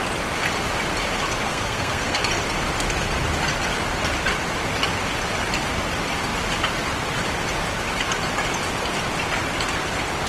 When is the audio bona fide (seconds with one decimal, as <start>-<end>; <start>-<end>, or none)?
0.0-1.5; 2.2-10.3